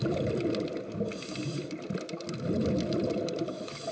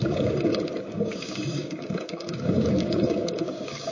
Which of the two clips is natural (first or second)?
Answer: first